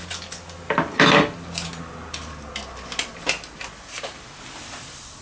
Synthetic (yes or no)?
no